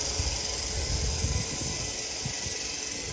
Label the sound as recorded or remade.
recorded